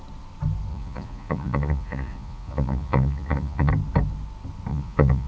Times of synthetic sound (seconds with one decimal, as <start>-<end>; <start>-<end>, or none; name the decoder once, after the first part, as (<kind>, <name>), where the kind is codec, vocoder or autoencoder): 0.7-3.7 (vocoder, Vocos); 4.7-5.3